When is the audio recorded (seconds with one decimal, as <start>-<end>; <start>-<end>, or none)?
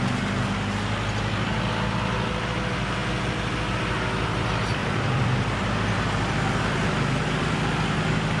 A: 0.0-4.8; 6.6-8.4